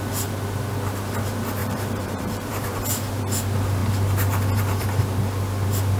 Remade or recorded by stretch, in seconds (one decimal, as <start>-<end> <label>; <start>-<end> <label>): 0.0-1.6 recorded; 1.6-3.2 remade; 3.2-6.0 recorded